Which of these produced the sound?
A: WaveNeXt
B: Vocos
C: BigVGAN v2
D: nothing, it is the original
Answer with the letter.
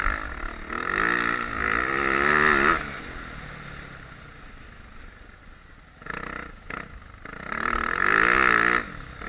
D